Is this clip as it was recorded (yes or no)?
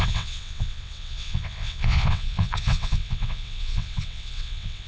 no